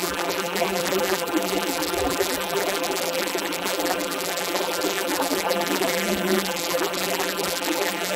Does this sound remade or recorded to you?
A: remade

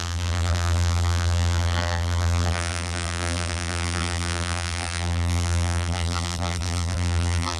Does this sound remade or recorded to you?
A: remade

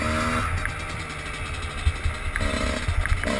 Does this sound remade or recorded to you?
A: recorded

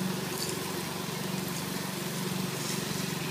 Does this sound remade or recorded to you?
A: recorded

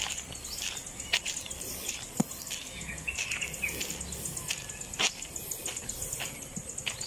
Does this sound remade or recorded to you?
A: recorded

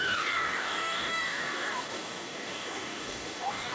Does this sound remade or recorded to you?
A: remade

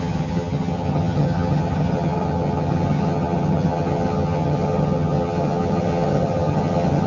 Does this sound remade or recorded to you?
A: remade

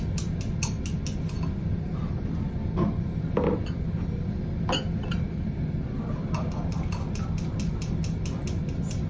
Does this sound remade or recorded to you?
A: recorded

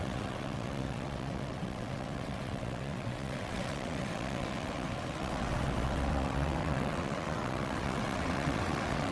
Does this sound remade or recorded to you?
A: remade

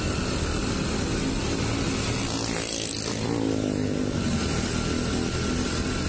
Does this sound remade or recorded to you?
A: recorded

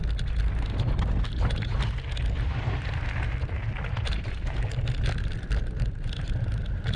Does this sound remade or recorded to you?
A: recorded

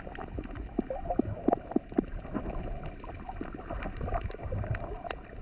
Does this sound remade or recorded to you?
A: recorded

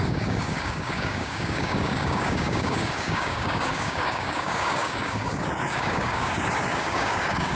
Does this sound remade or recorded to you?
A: remade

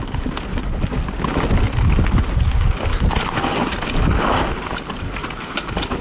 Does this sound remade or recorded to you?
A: recorded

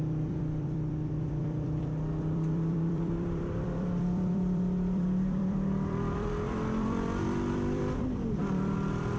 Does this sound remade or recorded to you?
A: remade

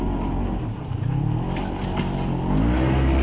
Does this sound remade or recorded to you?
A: recorded